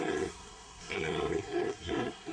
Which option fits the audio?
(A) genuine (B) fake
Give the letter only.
B